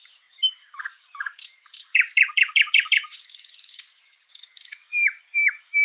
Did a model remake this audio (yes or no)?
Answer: yes